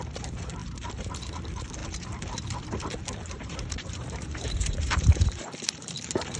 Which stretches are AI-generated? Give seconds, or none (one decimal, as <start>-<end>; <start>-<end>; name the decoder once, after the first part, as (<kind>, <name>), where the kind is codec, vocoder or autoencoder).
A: 0.0-6.4 (vocoder, BigVGAN v2)